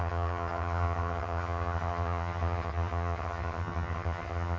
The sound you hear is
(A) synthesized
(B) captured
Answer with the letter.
A